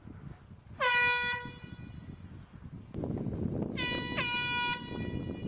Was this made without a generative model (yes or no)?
yes